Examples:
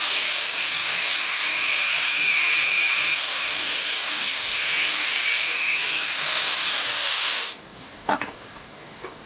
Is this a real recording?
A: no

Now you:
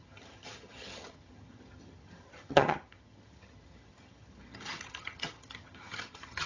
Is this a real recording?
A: no